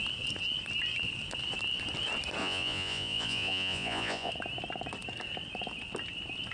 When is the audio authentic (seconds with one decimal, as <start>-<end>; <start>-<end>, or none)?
0.0-2.4; 4.3-6.5